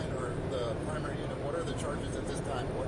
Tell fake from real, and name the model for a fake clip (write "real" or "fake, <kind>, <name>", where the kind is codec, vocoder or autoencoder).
fake, vocoder, BigVGAN v2